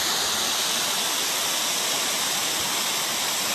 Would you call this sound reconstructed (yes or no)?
no